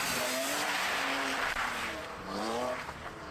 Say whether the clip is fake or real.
fake